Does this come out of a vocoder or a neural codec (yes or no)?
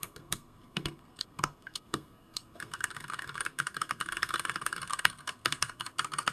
yes